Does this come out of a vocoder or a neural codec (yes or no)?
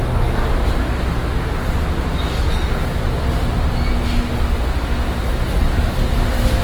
no